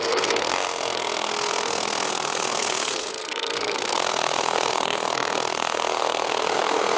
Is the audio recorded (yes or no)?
no